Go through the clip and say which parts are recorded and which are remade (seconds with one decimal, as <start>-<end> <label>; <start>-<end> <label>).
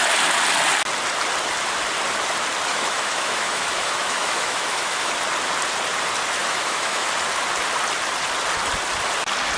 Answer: 0.0-2.7 recorded; 2.7-5.1 remade; 5.1-6.4 recorded; 6.4-7.1 remade; 7.1-9.6 recorded